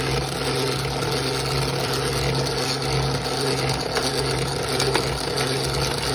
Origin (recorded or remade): recorded